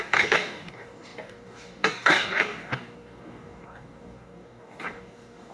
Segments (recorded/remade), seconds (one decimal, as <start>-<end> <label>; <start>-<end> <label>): 0.0-5.5 remade